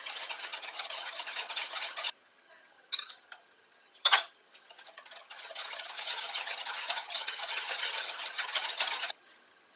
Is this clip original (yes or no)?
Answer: no